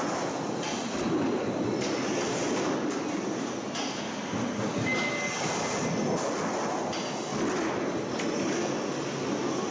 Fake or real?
real